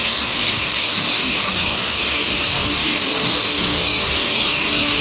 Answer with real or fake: fake